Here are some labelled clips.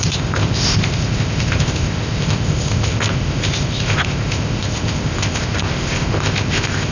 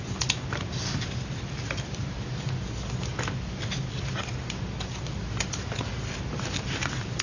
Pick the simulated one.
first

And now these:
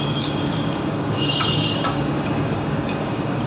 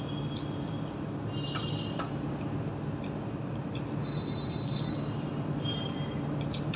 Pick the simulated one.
first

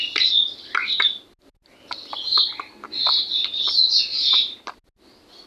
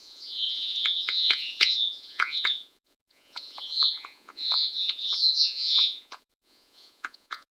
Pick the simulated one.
second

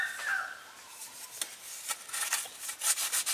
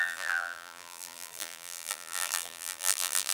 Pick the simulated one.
second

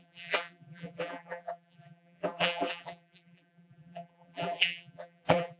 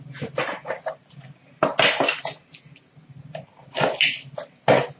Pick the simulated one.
first